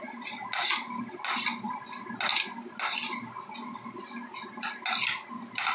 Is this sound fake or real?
real